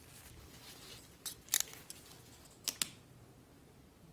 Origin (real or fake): real